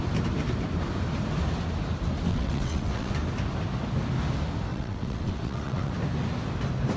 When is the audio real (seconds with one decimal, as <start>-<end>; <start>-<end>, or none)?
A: 0.0-2.3; 3.1-4.7; 5.9-7.0